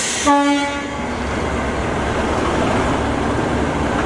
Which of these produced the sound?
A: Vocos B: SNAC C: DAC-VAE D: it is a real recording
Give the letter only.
D